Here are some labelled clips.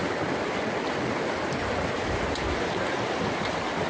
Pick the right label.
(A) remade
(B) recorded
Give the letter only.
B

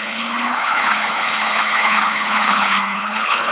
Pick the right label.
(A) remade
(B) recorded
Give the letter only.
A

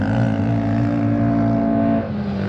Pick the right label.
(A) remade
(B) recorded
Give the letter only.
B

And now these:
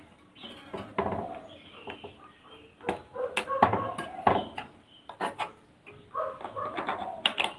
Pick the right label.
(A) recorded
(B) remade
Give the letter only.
A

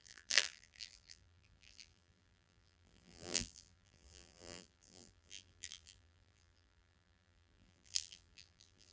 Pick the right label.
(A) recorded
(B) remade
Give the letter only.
B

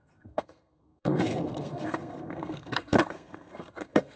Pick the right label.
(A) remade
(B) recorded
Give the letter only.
A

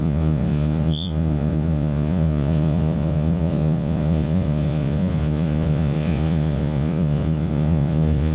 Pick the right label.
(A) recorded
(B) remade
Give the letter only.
B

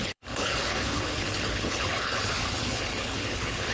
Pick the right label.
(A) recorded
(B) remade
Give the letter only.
B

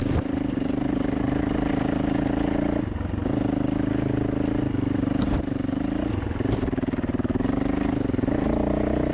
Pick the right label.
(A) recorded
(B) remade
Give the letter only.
A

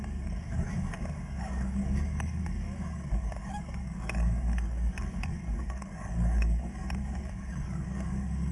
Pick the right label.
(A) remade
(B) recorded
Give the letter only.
A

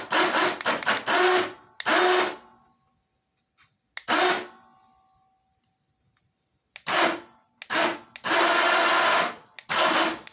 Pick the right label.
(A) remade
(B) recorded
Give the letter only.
B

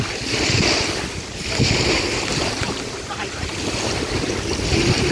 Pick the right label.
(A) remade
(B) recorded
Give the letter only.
B